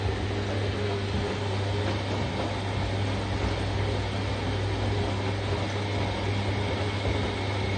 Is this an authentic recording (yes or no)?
yes